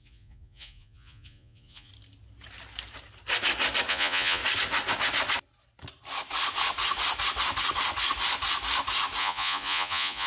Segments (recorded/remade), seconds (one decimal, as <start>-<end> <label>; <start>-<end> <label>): 0.0-1.9 remade; 1.9-3.9 recorded; 3.9-4.4 remade; 4.4-9.2 recorded; 9.2-10.3 remade